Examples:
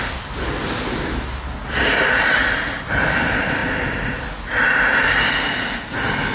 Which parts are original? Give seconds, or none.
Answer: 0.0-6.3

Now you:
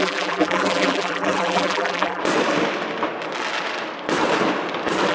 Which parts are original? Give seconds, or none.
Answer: 2.2-5.1

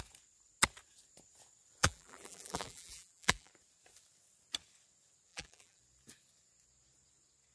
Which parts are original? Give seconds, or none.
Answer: 0.0-1.8; 3.5-5.3; 5.8-7.5

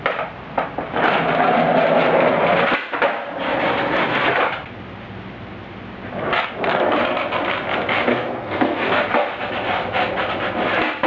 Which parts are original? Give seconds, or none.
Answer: 0.0-8.0; 9.0-11.1

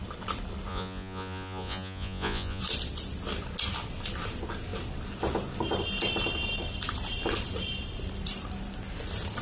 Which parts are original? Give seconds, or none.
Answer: 0.0-0.7; 2.6-9.4

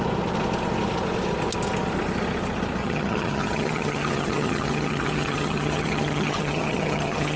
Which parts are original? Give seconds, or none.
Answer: 0.0-2.8